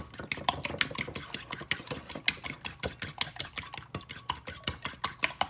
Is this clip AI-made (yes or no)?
no